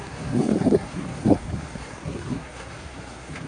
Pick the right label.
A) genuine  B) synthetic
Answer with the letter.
B